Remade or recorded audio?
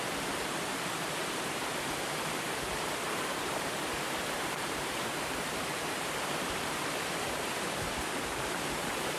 remade